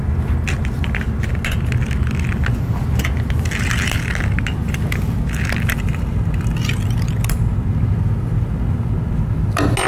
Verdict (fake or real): real